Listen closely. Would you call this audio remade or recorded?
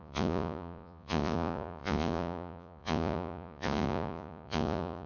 remade